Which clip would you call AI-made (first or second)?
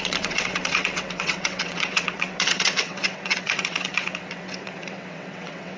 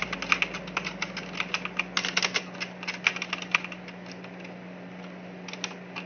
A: first